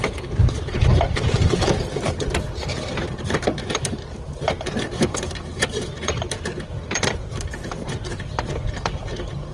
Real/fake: fake